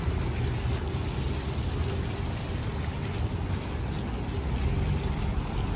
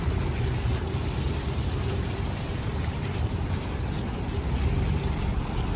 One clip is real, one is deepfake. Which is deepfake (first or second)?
second